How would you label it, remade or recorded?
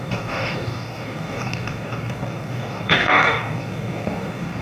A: remade